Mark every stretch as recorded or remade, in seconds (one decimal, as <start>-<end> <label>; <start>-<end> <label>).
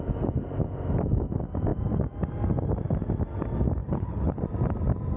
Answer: 0.0-3.8 recorded; 3.8-4.4 remade; 4.4-5.2 recorded